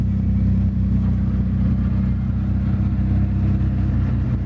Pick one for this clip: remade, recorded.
recorded